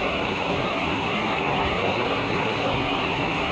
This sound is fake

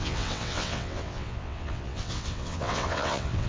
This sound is fake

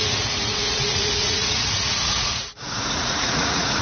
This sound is fake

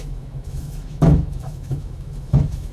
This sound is fake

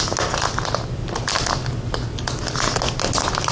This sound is real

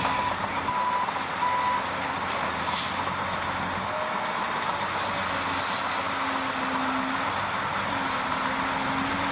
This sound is real